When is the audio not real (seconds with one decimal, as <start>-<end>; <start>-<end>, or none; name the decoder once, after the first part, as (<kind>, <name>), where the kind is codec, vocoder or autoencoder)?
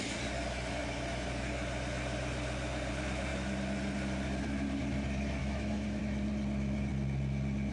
5.4-6.0 (autoencoder, DAC-VAE)